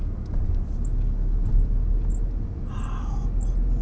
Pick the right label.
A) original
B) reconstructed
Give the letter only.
A